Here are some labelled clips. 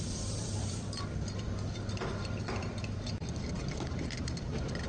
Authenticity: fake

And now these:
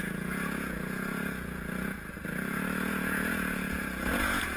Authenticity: fake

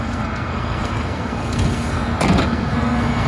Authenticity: fake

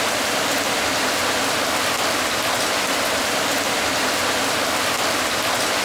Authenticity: real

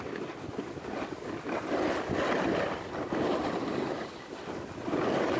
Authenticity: real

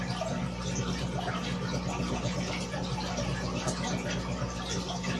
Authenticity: real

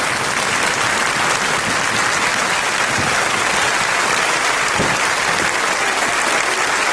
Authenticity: real